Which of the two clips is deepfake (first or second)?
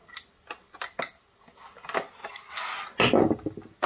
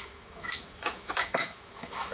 second